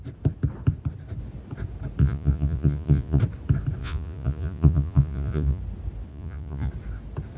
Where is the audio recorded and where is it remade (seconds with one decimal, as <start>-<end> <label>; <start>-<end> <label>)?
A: 0.0-2.0 recorded; 2.0-3.2 remade; 3.2-3.8 recorded; 3.8-5.6 remade; 5.6-6.1 recorded; 6.1-6.7 remade; 6.7-7.4 recorded